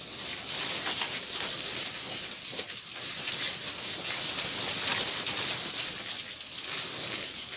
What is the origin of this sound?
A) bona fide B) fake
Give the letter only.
A